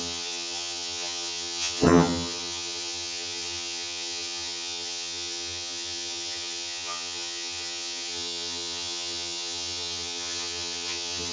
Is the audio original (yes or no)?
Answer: no